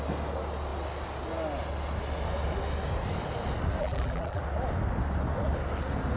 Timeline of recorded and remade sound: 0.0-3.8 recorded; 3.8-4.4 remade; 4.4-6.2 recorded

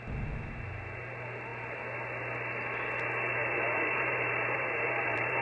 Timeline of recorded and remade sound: 0.0-3.4 recorded; 3.4-5.4 remade

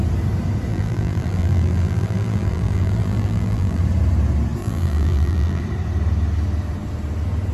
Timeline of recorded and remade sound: 0.0-0.7 recorded; 0.7-3.8 remade; 3.8-4.6 recorded; 4.6-5.6 remade; 5.6-7.5 recorded